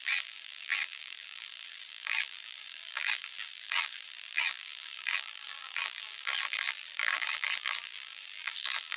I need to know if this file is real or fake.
fake